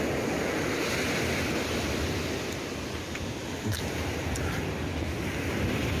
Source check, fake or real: real